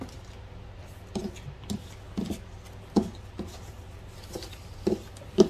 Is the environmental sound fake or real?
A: real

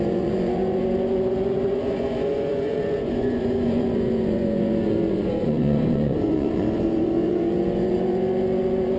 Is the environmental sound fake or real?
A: fake